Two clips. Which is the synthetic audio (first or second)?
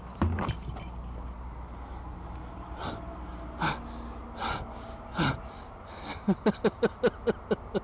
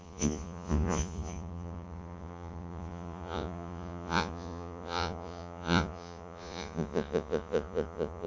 second